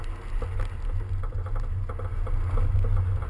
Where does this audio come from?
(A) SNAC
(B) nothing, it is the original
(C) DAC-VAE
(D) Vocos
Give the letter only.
B